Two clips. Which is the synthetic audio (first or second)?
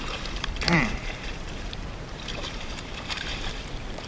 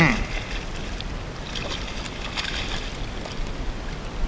first